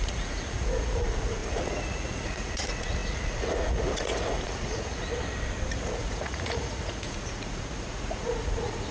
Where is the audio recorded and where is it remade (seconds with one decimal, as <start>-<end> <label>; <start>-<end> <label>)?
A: 0.0-5.1 remade; 5.1-5.7 recorded; 5.7-8.9 remade